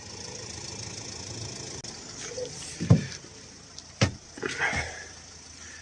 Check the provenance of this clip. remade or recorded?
recorded